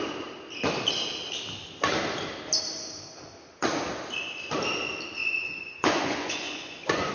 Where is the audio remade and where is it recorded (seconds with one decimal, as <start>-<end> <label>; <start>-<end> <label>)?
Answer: 0.0-5.2 recorded; 5.2-7.1 remade